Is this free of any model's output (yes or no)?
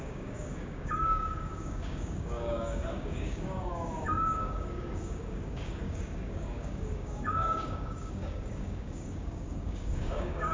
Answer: no